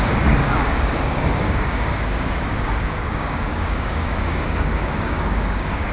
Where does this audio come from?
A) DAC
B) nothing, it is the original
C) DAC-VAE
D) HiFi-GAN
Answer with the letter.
A